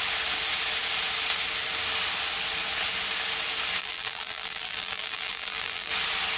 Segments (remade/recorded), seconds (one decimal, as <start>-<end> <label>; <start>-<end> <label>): 0.0-3.8 recorded; 3.8-5.9 remade; 5.9-6.4 recorded